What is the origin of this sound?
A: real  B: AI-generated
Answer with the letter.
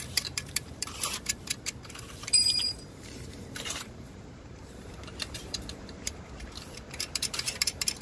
B